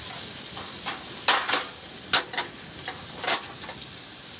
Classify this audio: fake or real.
real